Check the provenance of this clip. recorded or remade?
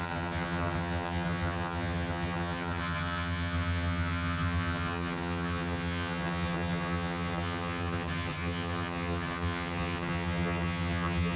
remade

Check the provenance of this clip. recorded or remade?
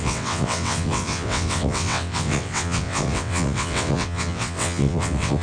remade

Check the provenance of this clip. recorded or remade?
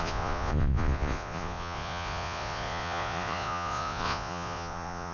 remade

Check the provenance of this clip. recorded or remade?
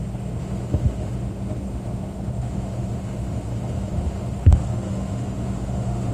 remade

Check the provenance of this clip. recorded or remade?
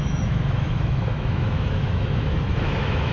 remade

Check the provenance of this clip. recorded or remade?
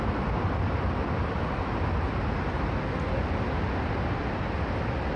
recorded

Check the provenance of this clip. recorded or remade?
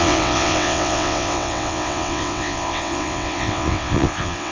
remade